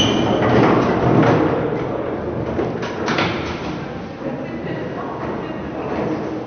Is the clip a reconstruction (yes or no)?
no